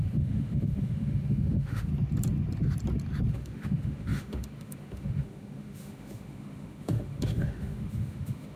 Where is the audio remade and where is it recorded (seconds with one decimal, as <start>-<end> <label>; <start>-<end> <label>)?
0.0-1.9 remade; 1.9-3.3 recorded; 3.3-8.6 remade